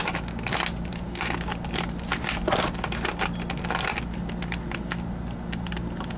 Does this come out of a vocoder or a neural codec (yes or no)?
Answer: no